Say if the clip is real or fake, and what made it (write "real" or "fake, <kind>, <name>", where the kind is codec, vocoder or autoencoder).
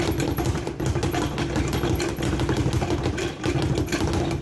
real